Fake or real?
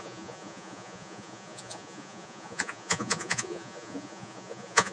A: fake